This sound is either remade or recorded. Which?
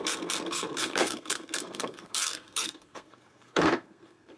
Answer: remade